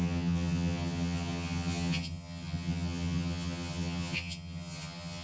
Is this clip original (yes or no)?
no